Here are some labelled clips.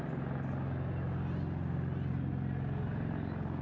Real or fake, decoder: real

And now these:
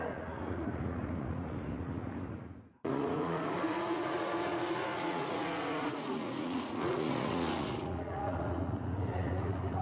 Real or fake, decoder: fake, vocoder, Vocos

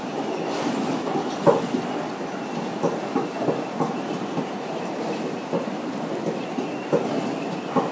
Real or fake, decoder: real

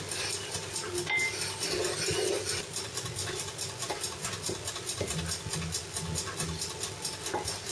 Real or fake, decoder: real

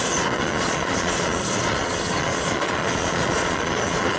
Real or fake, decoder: fake, vocoder, Vocos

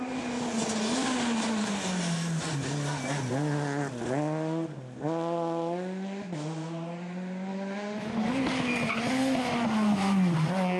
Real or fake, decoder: real